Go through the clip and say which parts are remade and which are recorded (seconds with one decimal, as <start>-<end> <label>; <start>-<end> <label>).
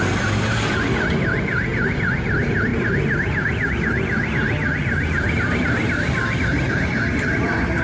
0.0-7.8 recorded